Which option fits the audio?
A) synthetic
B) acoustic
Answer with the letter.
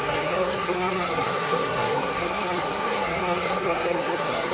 A